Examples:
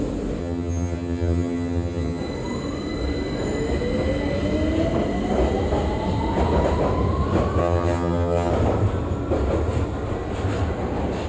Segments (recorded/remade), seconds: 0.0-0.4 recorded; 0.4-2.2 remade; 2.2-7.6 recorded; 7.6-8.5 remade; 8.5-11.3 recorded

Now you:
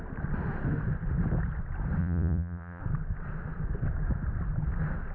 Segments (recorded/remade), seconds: 0.0-2.0 recorded; 2.0-2.8 remade; 2.8-5.1 recorded

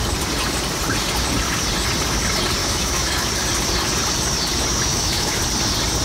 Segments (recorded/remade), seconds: 0.0-2.6 recorded; 2.6-3.3 remade; 3.3-4.9 recorded; 4.9-5.4 remade; 5.4-6.0 recorded

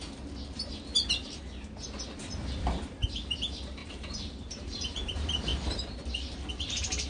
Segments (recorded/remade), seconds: 0.0-0.7 remade; 0.7-3.4 recorded; 3.4-3.8 remade; 3.8-4.4 recorded; 4.4-5.5 remade; 5.5-6.5 recorded; 6.5-7.1 remade